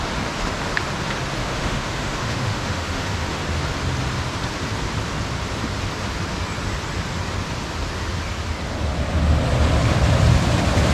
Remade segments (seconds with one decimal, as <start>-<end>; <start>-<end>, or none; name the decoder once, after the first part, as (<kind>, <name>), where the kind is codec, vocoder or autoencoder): 1.4-3.4 (autoencoder, DAC-VAE)